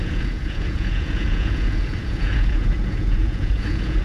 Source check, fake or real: fake